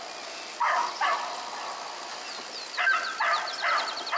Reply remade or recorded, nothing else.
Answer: recorded